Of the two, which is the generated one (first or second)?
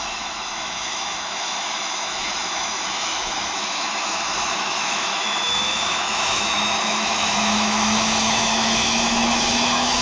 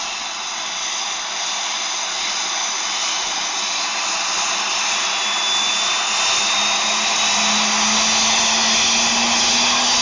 first